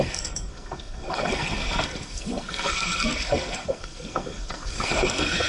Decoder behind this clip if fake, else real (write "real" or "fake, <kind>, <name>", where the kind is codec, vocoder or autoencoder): fake, codec, SNAC